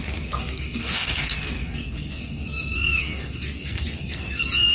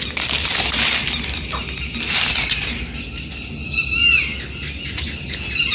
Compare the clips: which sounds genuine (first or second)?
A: second